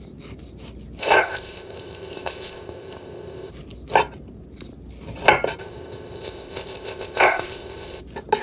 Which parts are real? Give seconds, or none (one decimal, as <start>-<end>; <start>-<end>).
0.0-1.0; 3.5-5.6; 8.0-8.4